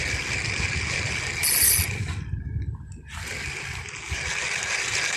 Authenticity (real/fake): real